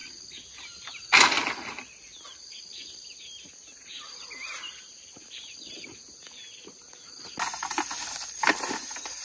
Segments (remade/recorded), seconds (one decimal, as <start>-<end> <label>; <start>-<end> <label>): 0.0-9.2 recorded